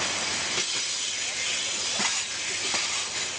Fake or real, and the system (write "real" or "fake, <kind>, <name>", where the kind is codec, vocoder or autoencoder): real